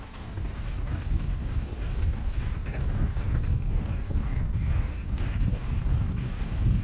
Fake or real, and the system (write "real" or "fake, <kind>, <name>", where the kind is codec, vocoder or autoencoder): fake, codec, DAC